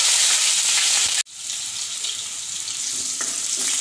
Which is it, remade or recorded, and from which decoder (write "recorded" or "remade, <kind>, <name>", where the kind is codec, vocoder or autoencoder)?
recorded